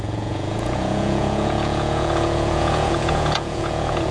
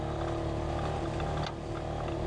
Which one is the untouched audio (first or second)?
second